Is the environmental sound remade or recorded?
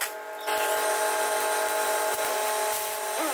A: recorded